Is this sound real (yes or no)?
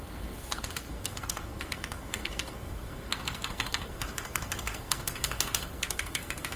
no